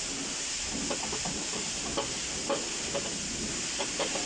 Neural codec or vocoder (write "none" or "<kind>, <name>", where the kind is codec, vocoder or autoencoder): none